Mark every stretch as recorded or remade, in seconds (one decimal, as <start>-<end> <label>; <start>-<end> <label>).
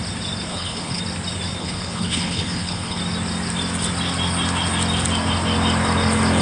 0.0-0.5 recorded; 0.5-1.0 remade; 1.0-1.6 recorded; 1.6-3.0 remade; 3.0-6.4 recorded